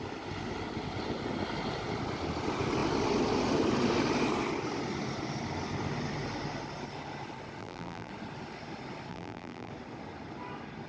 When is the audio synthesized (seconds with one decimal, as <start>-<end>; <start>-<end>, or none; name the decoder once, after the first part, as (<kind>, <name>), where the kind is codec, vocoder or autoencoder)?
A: 7.6-8.1 (vocoder, BigVGAN v2); 9.1-9.7